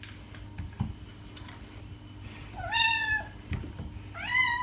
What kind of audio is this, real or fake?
real